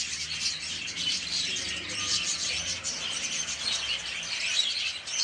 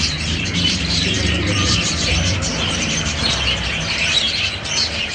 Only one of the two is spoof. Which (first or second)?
second